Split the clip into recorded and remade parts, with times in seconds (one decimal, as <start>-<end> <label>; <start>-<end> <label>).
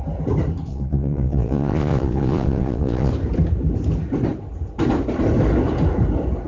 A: 0.0-0.7 recorded; 0.7-3.1 remade; 3.1-6.5 recorded